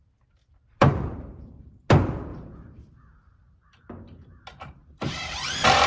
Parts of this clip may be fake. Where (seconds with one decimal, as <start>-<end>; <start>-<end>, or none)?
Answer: 0.4-1.8; 2.3-5.9